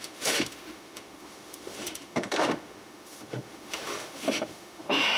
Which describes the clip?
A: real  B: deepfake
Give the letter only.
B